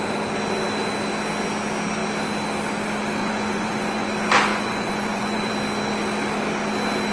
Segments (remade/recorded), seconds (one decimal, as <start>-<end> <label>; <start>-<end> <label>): 0.0-3.2 recorded; 3.2-4.1 remade; 4.1-4.5 recorded; 4.5-5.5 remade; 5.5-7.1 recorded